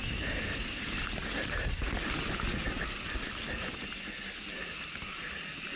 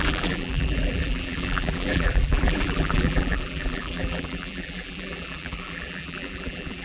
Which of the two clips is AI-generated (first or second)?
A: second